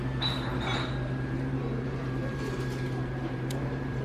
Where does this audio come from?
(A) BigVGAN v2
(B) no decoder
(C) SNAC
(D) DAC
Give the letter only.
A